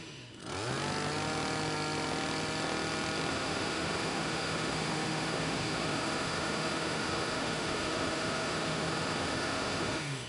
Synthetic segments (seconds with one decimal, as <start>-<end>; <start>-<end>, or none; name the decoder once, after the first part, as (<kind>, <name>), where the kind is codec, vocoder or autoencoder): 0.0-0.4 (autoencoder, DAC-VAE); 3.3-10.3

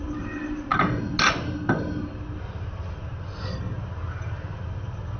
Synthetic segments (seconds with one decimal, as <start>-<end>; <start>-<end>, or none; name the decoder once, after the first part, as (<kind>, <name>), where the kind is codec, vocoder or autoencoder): none

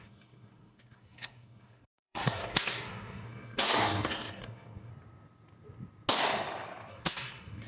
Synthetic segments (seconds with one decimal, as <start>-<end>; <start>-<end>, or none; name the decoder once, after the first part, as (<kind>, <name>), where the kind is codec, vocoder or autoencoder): 0.0-4.9 (codec, SNAC); 6.9-7.7